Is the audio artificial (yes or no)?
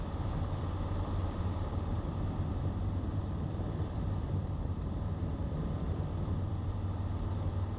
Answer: yes